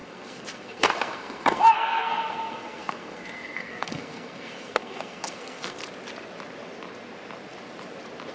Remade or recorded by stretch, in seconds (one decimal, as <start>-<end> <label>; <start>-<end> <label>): 0.0-5.8 remade; 5.8-8.3 recorded